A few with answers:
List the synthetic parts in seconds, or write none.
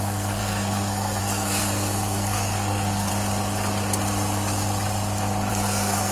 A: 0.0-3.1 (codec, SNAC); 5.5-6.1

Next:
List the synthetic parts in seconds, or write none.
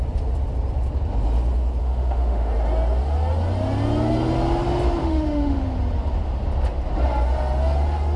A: 1.8-2.5 (autoencoder, DAC-VAE); 5.0-5.6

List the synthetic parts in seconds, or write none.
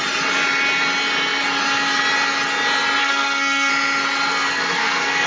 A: 3.0-3.7 (codec, SNAC); 4.3-5.3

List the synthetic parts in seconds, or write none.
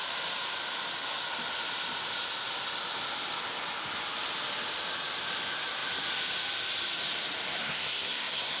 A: 7.6-8.6 (codec, SNAC)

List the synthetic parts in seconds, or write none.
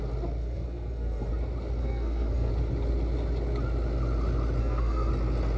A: 0.4-1.3 (codec, SNAC); 1.8-2.5; 4.6-5.1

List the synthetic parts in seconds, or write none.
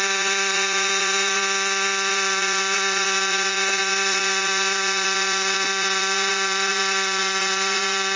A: 0.0-1.4 (vocoder, Vocos); 2.1-8.2